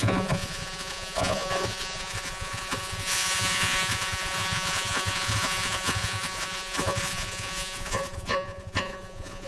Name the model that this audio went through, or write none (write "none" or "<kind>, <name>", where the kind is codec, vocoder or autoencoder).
vocoder, Vocos